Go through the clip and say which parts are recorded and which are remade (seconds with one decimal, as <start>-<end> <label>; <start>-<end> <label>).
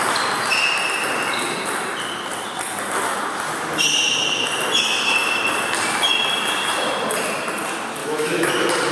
0.0-8.0 recorded; 8.0-8.5 remade; 8.5-8.9 recorded